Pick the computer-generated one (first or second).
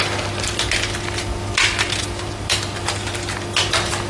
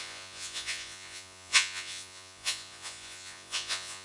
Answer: second